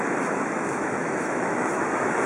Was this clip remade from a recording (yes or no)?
yes